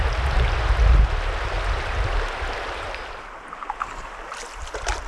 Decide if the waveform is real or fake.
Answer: real